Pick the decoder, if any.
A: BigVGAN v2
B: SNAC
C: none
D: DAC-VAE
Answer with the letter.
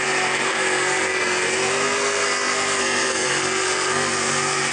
B